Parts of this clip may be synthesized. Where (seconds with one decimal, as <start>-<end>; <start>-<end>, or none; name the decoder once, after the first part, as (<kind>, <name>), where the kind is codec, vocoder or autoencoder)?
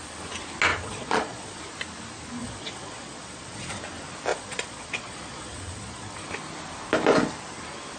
0.7-1.6 (vocoder, Vocos); 2.4-3.8; 4.3-6.3